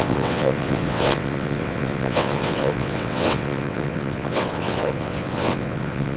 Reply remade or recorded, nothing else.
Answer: remade